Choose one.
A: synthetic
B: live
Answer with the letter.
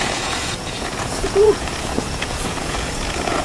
A